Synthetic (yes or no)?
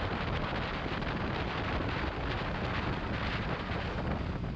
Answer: no